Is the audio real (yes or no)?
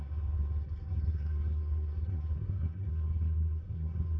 no